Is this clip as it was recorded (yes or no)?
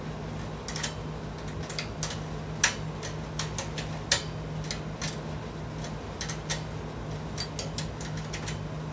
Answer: yes